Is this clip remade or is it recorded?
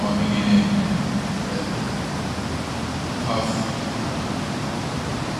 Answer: recorded